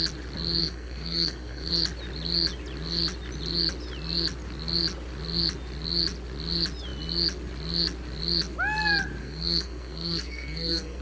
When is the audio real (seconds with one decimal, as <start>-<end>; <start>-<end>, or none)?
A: 0.0-0.6; 1.7-9.2